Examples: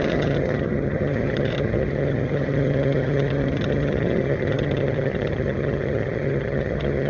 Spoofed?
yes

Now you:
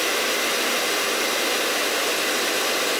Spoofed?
no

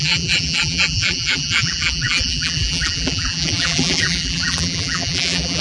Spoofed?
yes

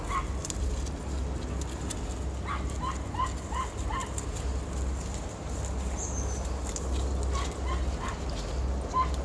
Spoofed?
no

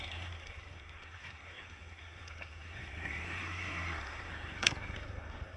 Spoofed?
yes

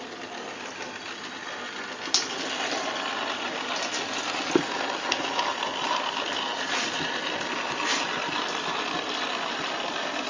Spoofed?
no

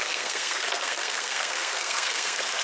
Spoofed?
yes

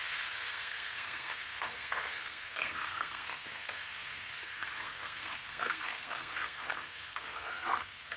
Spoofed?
yes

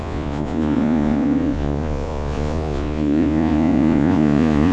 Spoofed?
yes